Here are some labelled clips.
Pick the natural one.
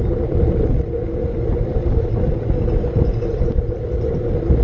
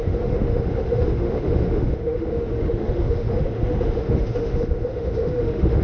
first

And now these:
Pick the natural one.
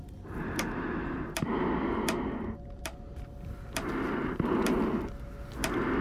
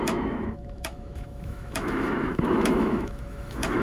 first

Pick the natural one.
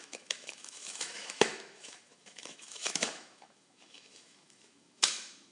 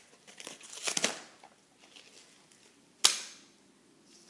second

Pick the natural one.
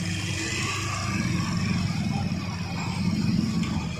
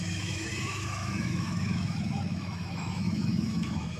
first